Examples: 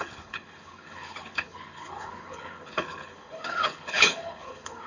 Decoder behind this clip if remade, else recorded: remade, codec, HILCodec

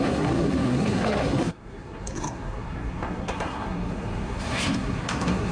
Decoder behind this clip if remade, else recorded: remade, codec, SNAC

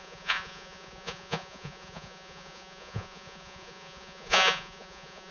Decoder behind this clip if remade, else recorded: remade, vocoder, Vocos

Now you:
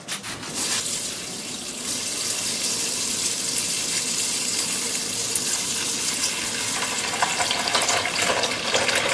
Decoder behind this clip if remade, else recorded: recorded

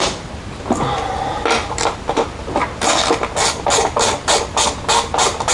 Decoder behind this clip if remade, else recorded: recorded